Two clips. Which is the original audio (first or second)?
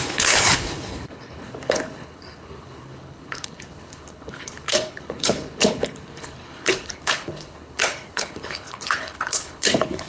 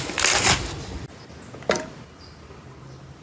second